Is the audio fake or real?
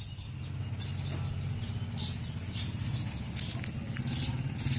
real